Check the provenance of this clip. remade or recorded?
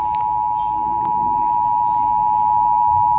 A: recorded